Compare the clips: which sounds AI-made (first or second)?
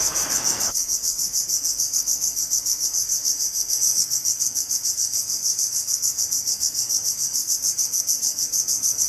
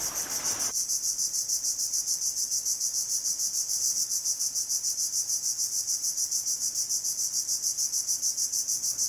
first